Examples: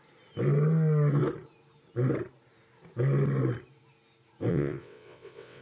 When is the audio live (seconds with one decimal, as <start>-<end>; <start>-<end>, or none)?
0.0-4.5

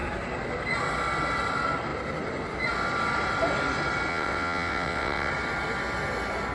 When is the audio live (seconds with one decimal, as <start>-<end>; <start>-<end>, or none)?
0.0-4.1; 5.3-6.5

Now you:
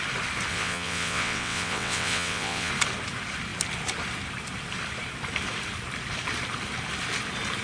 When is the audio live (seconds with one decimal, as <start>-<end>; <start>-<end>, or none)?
0.0-0.5; 2.7-7.6

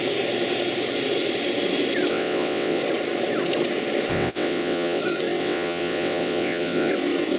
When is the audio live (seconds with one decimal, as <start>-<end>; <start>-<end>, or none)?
0.0-2.1; 2.8-4.1; 5.0-5.4; 6.9-7.4

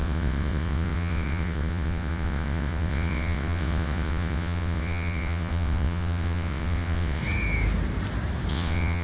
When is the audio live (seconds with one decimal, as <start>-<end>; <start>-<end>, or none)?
7.2-8.5

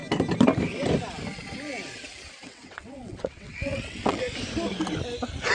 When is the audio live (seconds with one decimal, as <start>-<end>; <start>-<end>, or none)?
0.0-2.4; 4.2-5.5